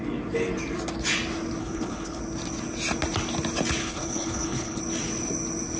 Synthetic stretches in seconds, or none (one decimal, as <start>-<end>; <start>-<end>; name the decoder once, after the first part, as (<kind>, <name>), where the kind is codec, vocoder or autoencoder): 1.6-2.2 (codec, HILCodec); 3.8-4.8